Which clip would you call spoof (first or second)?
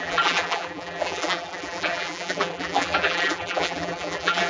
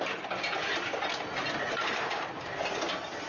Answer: first